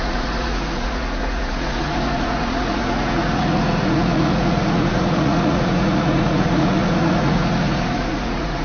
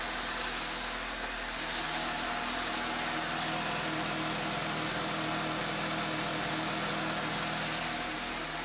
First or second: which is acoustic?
second